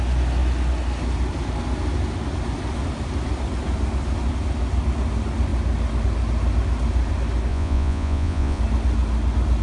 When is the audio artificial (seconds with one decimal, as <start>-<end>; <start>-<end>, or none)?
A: 7.5-8.6